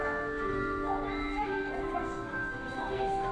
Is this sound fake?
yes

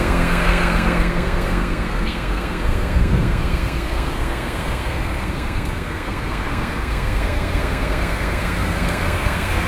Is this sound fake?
yes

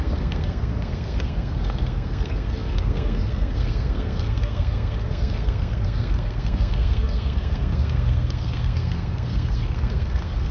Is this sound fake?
yes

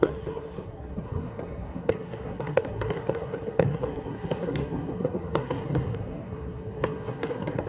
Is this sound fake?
yes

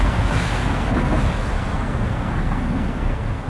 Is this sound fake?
yes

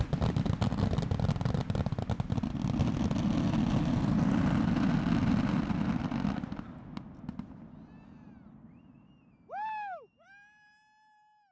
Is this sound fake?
no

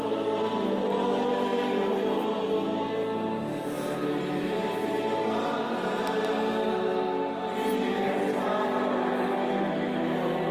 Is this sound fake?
no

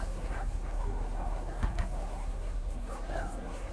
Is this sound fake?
yes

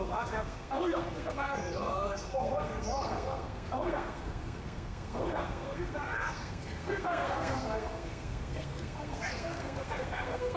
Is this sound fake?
yes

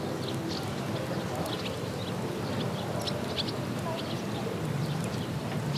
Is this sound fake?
no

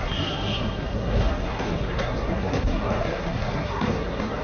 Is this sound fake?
yes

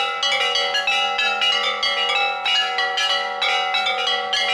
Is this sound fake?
no